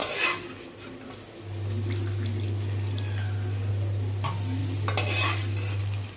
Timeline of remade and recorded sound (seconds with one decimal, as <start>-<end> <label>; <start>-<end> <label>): 0.0-6.2 recorded